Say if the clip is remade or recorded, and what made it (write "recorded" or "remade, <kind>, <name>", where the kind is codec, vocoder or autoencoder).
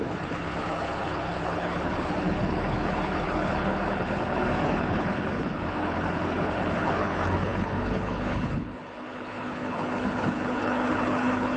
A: remade, codec, HILCodec